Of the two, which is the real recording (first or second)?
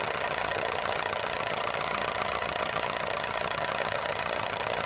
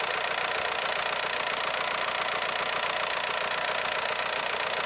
second